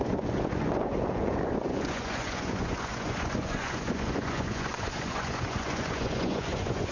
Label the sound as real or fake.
fake